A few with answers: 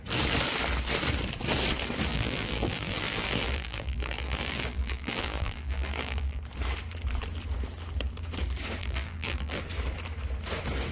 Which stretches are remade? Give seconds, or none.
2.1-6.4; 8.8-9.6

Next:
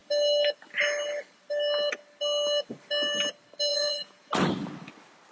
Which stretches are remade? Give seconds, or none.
3.7-4.3

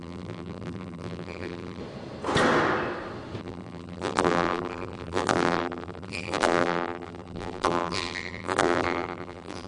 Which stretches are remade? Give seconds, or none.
0.0-1.8; 3.4-9.7

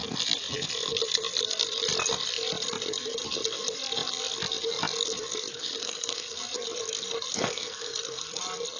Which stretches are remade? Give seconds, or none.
5.5-6.4; 7.3-8.4

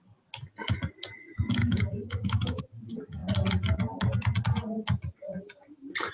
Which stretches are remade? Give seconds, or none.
1.6-2.6

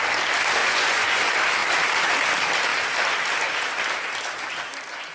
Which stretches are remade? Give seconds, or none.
0.6-1.2

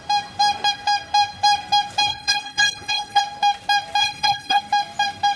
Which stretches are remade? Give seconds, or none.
2.1-3.2; 4.0-4.6

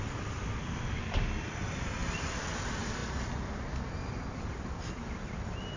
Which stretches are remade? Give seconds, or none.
none